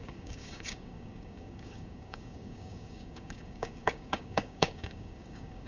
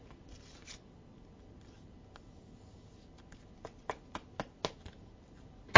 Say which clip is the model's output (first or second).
first